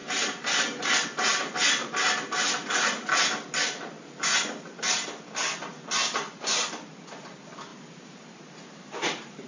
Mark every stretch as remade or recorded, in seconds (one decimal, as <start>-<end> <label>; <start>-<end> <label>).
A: 0.0-0.8 remade; 0.8-7.7 recorded; 7.7-9.5 remade